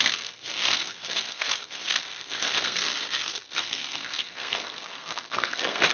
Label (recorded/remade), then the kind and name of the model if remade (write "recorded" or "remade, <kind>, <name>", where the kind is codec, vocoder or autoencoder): remade, codec, SNAC